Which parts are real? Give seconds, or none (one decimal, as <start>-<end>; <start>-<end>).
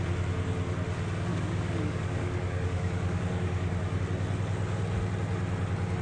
0.0-1.3; 4.0-6.0